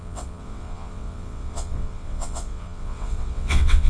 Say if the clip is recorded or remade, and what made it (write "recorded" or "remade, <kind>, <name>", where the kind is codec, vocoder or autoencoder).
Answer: remade, vocoder, WaveNeXt